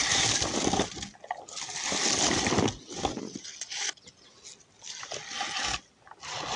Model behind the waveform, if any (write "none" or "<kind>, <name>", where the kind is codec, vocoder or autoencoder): none